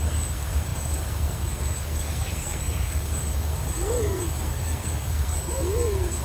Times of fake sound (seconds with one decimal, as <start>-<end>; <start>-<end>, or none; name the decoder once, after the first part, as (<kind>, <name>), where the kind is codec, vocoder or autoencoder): 0.0-6.2 (codec, SNAC)